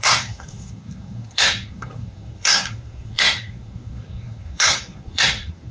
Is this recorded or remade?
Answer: remade